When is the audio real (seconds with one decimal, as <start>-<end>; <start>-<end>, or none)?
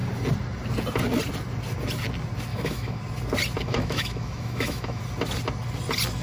0.0-2.5; 3.0-3.6; 5.0-6.2